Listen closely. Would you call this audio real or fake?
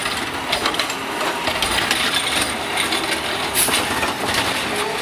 real